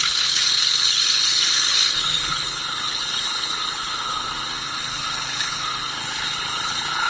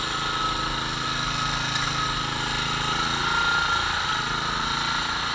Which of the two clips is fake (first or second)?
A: first